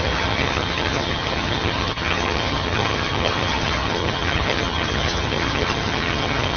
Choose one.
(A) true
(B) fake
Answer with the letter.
B